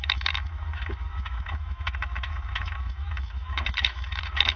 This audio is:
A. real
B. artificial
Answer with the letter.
B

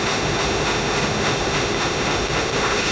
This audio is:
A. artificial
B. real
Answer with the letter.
A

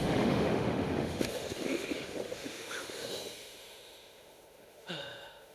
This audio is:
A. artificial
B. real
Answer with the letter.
A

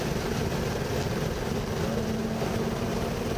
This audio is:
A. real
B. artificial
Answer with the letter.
A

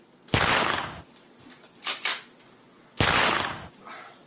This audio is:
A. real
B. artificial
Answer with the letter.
A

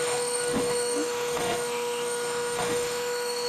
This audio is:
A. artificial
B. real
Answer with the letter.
A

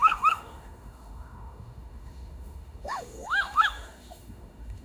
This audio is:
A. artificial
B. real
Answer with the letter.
A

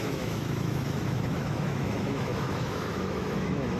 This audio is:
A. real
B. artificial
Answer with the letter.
B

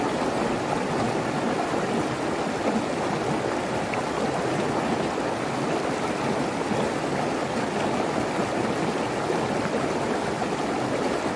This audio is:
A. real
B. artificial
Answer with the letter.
A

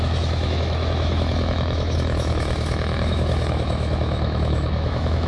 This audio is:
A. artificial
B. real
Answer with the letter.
A